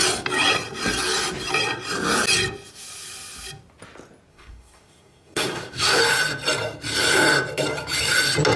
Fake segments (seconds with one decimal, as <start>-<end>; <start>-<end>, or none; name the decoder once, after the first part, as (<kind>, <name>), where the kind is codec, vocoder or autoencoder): 4.3-6.0 (codec, SNAC)